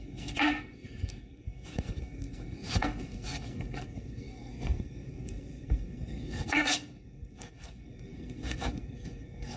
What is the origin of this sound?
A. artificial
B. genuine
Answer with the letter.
A